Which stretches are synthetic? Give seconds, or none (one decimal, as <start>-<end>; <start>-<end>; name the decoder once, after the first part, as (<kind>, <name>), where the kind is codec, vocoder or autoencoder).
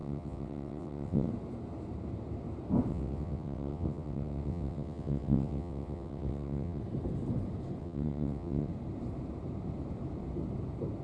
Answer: 0.0-1.3 (vocoder, WaveNeXt); 2.9-6.8; 7.8-8.7